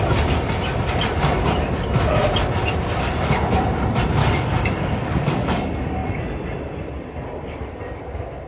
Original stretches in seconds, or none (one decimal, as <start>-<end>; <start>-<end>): 0.0-4.2; 5.6-8.5